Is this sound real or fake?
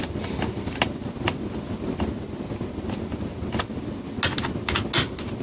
real